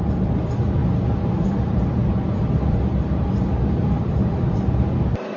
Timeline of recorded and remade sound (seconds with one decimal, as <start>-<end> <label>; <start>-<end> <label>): 0.0-0.8 remade; 0.8-1.4 recorded; 1.4-5.4 remade